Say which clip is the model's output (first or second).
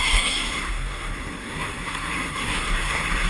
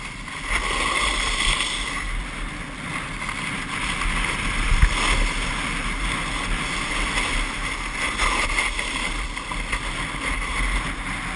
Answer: first